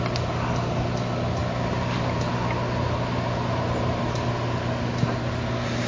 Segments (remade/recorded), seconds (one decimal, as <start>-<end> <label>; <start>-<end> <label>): 0.0-5.9 recorded

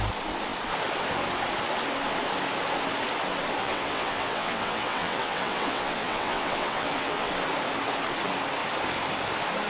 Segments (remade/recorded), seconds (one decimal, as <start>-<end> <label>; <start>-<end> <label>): 0.0-3.6 recorded; 3.6-7.3 remade; 7.3-9.7 recorded

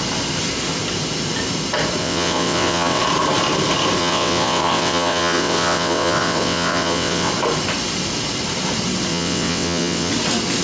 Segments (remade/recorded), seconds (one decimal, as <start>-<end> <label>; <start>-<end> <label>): 0.0-2.0 recorded; 2.0-3.0 remade; 3.0-4.0 recorded; 4.0-7.3 remade; 7.3-9.1 recorded; 9.1-10.1 remade; 10.1-10.6 recorded

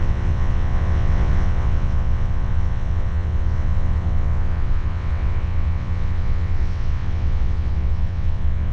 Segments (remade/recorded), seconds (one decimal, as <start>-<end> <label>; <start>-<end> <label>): 0.0-8.7 remade

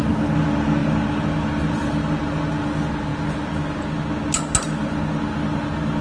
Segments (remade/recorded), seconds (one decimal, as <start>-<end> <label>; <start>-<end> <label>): 0.0-6.0 recorded

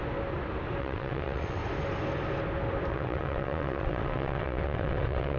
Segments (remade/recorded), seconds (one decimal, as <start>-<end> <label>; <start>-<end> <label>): 0.0-0.8 recorded; 0.8-1.6 remade; 1.6-2.9 recorded; 2.9-5.4 remade

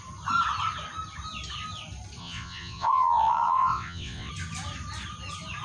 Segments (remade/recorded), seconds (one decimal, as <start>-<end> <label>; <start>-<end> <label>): 0.0-2.2 recorded; 2.2-4.3 remade; 4.3-5.6 recorded

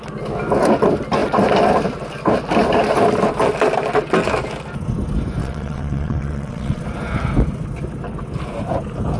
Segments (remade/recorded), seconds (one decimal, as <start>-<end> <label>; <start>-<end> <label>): 0.0-5.4 recorded; 5.4-6.8 remade; 6.8-9.2 recorded